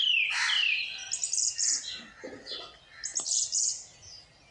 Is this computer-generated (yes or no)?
no